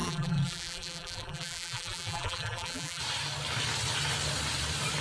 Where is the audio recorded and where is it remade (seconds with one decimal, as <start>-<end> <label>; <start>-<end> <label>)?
0.0-3.0 remade; 3.0-5.0 recorded